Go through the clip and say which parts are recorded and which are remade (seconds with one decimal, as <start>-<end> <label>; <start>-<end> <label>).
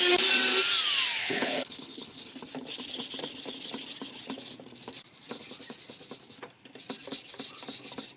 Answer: 0.0-1.2 recorded; 1.2-2.2 remade; 2.2-8.2 recorded